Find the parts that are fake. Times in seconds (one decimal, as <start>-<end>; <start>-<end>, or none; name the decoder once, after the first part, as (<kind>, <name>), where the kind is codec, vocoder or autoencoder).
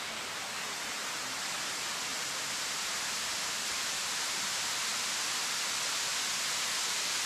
2.1-4.5 (vocoder, BigVGAN v2); 4.9-5.5